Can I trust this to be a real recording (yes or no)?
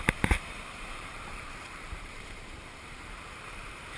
no